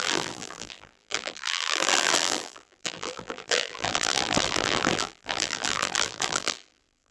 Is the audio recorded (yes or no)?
no